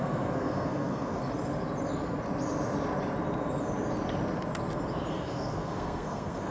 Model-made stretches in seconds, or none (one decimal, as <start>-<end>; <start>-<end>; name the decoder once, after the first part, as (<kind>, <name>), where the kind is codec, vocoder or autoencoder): 0.0-1.2 (codec, SNAC); 5.1-6.5